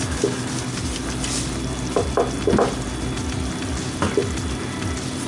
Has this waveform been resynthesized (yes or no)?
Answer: no